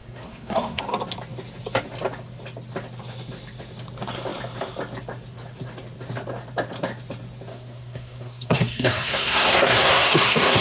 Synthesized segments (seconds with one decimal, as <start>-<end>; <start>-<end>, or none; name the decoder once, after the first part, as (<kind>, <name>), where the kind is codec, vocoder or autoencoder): 0.0-0.8 (codec, SNAC); 7.5-10.6